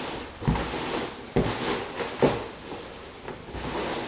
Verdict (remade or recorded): recorded